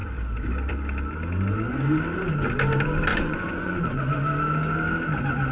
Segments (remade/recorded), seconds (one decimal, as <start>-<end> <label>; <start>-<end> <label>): 0.0-3.1 recorded; 3.1-4.0 remade; 4.0-5.5 recorded